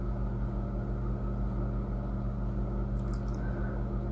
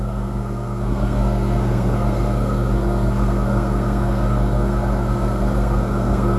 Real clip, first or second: first